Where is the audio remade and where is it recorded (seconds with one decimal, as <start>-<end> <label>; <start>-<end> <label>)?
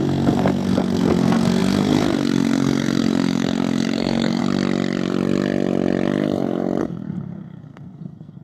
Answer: 0.0-4.4 remade; 4.4-6.8 recorded; 6.8-8.4 remade